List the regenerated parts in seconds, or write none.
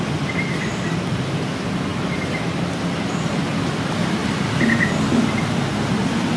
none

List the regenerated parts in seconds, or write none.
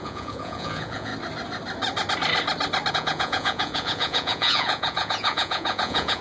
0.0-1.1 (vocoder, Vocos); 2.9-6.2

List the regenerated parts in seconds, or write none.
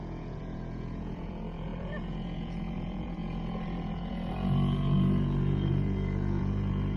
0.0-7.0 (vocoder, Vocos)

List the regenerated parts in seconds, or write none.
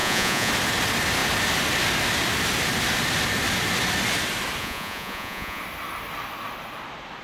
0.0-0.5 (vocoder, Vocos); 4.6-5.6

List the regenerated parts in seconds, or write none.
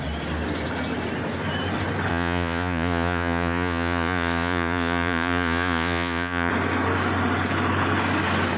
2.1-6.5 (vocoder, Vocos)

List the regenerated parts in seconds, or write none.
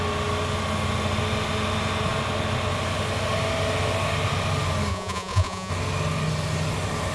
4.9-5.7 (vocoder, Vocos)